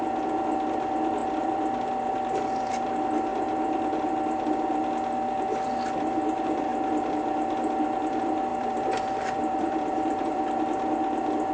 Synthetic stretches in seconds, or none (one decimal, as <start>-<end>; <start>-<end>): 1.2-1.9; 8.5-10.4